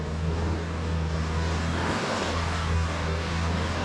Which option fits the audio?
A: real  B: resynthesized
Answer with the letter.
B